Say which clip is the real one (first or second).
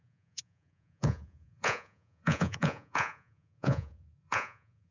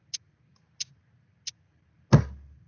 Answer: second